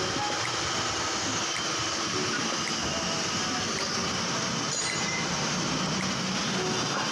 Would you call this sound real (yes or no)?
yes